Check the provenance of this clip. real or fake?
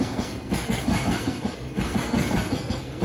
fake